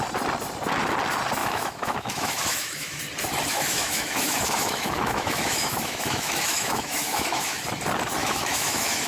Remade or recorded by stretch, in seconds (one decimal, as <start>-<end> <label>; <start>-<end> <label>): 0.0-1.4 recorded; 1.4-3.0 remade; 3.0-3.5 recorded; 3.5-7.6 remade; 7.6-8.2 recorded; 8.2-9.1 remade